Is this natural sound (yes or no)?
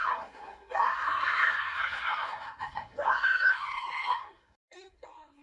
no